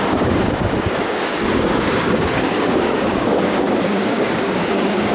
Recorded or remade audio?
remade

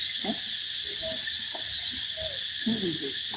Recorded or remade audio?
recorded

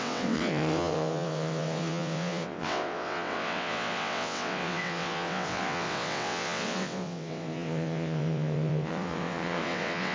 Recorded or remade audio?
remade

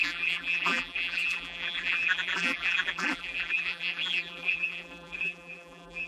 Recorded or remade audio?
remade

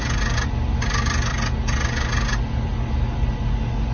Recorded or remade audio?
recorded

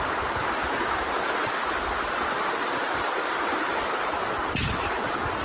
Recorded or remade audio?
recorded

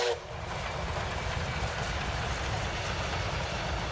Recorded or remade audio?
recorded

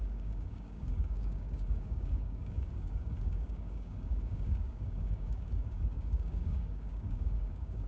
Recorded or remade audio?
remade